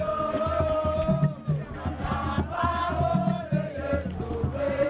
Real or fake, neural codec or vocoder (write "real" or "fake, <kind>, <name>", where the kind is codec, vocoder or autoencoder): real